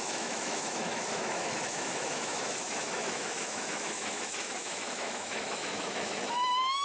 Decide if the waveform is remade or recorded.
remade